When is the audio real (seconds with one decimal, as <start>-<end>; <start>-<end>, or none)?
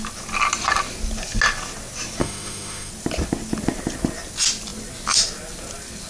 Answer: 0.0-2.2; 2.9-6.1